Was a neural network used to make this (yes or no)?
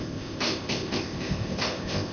yes